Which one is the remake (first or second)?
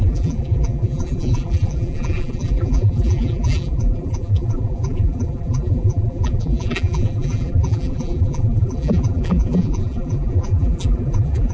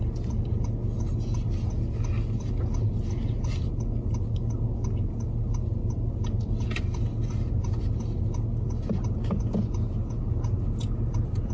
first